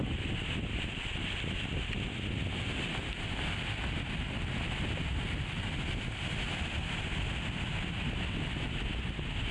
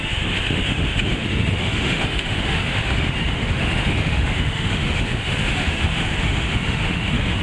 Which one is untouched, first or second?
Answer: first